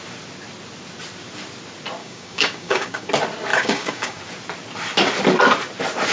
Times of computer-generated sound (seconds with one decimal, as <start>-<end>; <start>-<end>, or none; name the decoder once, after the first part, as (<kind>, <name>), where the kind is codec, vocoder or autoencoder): 2.0-3.1 (codec, DAC); 3.5-4.2